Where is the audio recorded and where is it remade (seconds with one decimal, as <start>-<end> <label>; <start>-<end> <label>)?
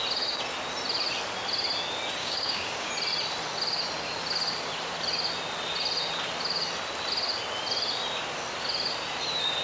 0.0-2.2 recorded; 2.2-2.9 remade; 2.9-9.6 recorded